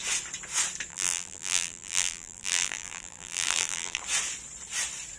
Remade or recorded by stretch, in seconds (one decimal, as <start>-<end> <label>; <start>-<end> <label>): 0.0-0.9 recorded; 0.9-4.0 remade; 4.0-5.2 recorded

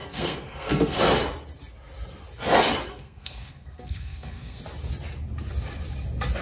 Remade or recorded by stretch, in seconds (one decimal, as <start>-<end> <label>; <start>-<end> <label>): 0.0-1.0 remade; 1.0-2.9 recorded; 2.9-4.6 remade; 4.6-6.4 recorded

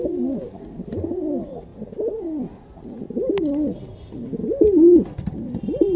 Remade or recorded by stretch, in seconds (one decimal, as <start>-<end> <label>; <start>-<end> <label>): 0.0-6.0 recorded

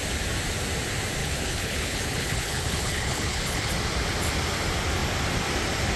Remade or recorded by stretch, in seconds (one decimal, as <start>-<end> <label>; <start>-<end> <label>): 0.0-1.2 recorded; 1.2-3.7 remade; 3.7-6.0 recorded

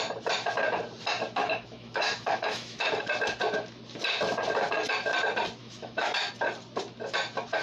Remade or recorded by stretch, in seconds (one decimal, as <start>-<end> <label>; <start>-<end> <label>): 0.0-1.4 recorded; 1.4-2.9 remade; 2.9-5.6 recorded; 5.6-6.3 remade; 6.3-7.6 recorded